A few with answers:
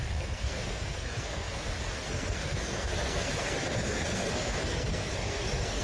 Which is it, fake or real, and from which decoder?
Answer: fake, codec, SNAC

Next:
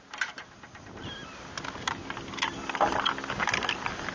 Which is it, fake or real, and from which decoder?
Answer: real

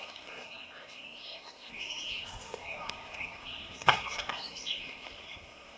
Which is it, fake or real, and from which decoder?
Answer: fake, codec, SNAC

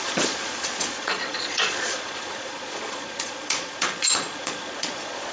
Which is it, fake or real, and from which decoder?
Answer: fake, vocoder, Vocos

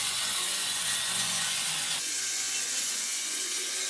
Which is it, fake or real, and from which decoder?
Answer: fake, vocoder, Vocos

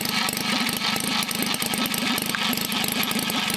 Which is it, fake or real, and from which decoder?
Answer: real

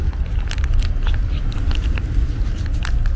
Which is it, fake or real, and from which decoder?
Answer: real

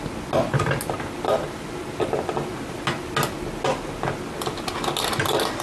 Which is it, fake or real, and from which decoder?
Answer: real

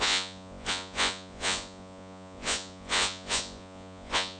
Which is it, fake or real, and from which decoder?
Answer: fake, vocoder, Vocos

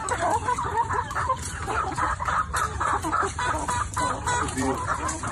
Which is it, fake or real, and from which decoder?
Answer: fake, vocoder, BigVGAN v2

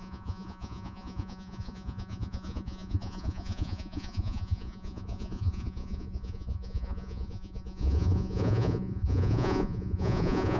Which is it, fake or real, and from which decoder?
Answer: fake, vocoder, Vocos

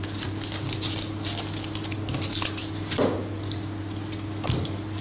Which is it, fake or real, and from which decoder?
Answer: real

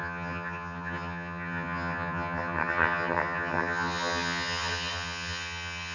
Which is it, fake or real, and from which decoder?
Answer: fake, vocoder, HiFi-GAN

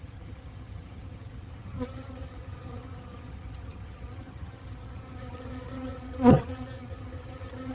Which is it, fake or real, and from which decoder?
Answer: fake, vocoder, HiFi-GAN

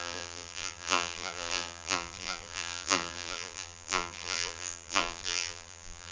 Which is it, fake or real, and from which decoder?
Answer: fake, vocoder, BigVGAN v2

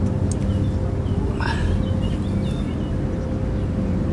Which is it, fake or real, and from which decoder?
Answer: real